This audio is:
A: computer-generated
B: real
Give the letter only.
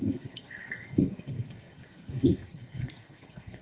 A